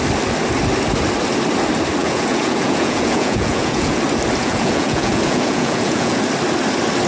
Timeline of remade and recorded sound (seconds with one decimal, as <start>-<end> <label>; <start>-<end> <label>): 0.0-2.0 recorded; 2.0-4.0 remade; 4.0-4.4 recorded; 4.4-6.2 remade; 6.2-7.1 recorded